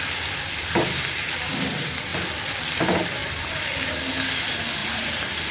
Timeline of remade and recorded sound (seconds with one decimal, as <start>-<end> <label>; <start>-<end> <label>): 0.0-4.8 recorded; 4.8-5.5 remade